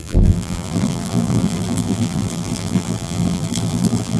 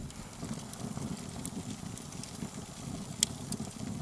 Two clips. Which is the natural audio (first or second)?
second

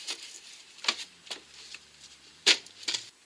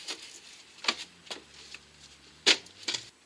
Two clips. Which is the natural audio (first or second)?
second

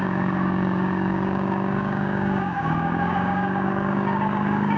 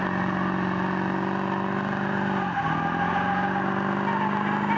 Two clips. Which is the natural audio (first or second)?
second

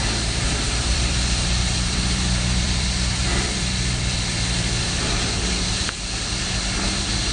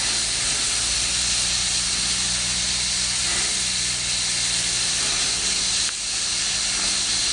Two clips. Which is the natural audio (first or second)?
second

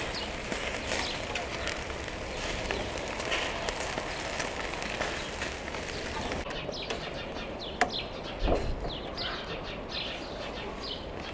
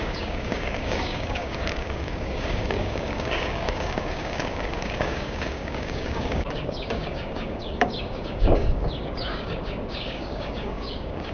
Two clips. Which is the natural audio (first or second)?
first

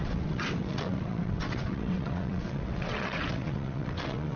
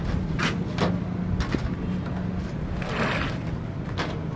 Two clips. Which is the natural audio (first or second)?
second